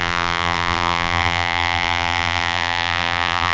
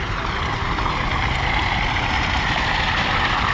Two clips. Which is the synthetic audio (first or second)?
first